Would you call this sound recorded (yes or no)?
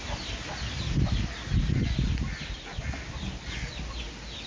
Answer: yes